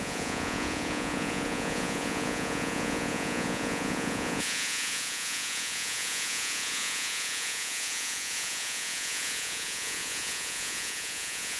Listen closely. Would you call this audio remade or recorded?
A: remade